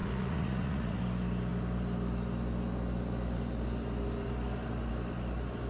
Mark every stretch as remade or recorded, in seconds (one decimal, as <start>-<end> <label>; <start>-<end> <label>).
0.0-1.0 remade; 1.0-5.7 recorded